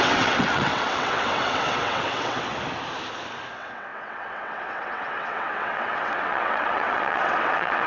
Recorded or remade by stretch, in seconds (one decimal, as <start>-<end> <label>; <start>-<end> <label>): 0.0-2.5 remade; 2.5-3.5 recorded; 3.5-7.9 remade